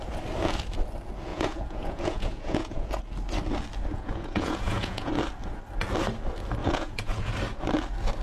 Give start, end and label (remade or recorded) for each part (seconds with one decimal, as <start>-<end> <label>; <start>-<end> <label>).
0.0-1.3 recorded; 1.3-3.0 remade; 3.0-3.9 recorded; 3.9-5.1 remade; 5.1-6.6 recorded; 6.6-7.3 remade; 7.3-8.2 recorded